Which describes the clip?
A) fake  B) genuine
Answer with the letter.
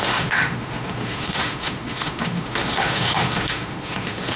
A